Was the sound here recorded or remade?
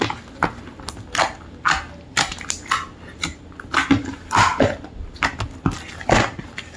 recorded